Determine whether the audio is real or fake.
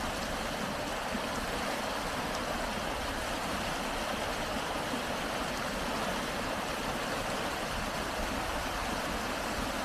fake